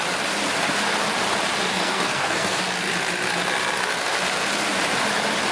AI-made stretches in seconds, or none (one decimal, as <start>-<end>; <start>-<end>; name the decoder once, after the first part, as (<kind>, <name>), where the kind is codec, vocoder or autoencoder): 1.7-2.6 (codec, SNAC)

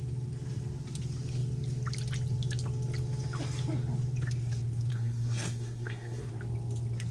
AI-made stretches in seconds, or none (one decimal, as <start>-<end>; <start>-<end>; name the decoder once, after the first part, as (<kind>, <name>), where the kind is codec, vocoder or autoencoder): 4.9-6.3 (codec, SNAC)

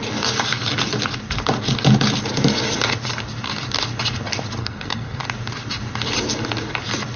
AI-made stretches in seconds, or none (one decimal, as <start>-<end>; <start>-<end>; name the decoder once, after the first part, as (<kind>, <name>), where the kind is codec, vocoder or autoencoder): 4.6-5.2 (codec, SNAC)

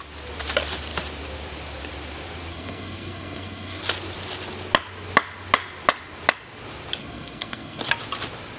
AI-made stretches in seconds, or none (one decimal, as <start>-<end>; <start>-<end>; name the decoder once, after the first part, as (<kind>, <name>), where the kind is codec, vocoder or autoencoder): 2.5-3.8 (codec, SNAC); 7.0-7.8

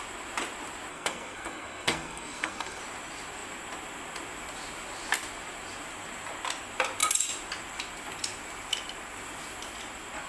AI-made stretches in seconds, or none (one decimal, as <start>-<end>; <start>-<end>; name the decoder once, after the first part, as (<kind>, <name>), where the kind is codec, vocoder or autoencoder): 0.9-2.8 (codec, SNAC)

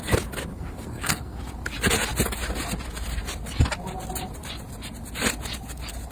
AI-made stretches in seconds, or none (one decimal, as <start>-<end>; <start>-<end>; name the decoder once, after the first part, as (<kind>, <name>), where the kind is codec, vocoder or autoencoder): 0.5-1.4 (codec, SNAC)